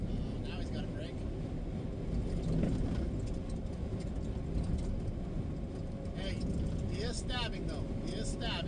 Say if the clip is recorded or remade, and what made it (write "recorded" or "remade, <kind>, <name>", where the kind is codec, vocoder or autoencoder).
recorded